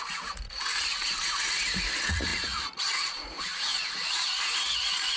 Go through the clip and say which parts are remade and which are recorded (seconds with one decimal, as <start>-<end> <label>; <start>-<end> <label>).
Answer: 0.0-5.2 remade